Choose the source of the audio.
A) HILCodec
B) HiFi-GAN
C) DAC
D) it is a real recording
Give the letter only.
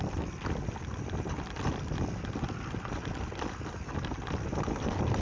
D